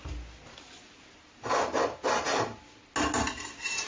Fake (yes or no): no